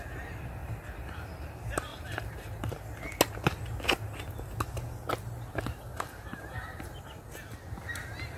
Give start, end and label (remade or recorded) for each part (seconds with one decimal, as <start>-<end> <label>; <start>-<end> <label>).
0.0-0.6 recorded; 0.6-1.3 remade; 1.3-1.9 recorded; 1.9-3.0 remade; 3.0-5.9 recorded; 5.9-7.3 remade; 7.3-8.4 recorded